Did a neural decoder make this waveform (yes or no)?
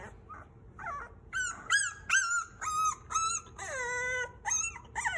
no